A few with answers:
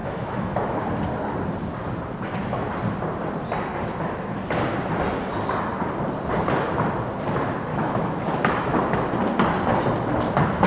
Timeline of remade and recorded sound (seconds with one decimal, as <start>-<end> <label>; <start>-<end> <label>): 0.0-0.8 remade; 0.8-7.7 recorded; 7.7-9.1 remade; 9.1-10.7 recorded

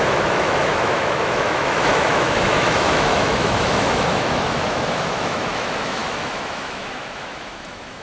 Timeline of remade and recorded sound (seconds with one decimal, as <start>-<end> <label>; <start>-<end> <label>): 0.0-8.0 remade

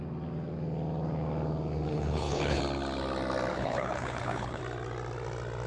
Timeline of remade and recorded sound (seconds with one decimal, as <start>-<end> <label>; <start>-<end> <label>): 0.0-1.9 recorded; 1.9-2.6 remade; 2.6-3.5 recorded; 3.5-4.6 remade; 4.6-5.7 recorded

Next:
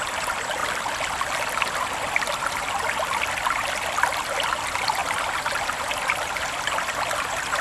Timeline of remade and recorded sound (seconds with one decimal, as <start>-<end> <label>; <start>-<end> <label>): 0.0-7.6 recorded

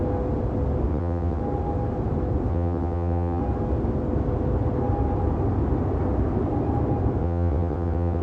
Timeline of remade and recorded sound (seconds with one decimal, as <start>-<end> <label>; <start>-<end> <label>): 0.0-0.9 recorded; 0.9-1.4 remade; 1.4-2.5 recorded; 2.5-3.4 remade; 3.4-7.2 recorded; 7.2-8.2 remade

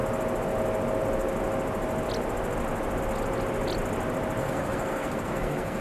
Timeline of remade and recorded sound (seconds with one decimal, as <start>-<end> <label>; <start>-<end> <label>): 0.0-4.4 recorded; 4.4-5.8 remade